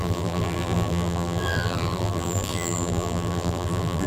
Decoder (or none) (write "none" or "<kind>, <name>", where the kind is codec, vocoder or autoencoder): vocoder, BigVGAN v2